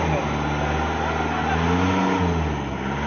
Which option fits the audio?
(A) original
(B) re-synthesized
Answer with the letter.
A